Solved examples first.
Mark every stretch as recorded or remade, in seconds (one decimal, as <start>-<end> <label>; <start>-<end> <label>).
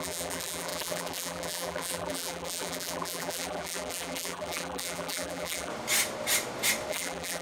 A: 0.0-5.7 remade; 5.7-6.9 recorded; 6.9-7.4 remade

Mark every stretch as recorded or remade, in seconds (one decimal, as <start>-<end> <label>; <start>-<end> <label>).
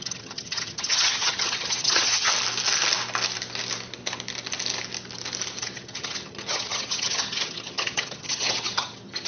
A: 0.0-2.3 remade; 2.3-5.6 recorded; 5.6-9.3 remade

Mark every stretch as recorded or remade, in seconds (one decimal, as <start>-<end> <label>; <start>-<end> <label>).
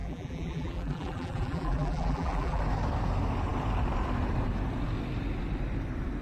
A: 0.0-2.6 remade; 2.6-6.2 recorded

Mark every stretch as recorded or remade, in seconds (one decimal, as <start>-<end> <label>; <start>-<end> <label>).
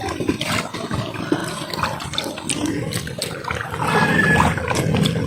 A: 0.0-1.4 recorded; 1.4-3.2 remade; 3.2-5.3 recorded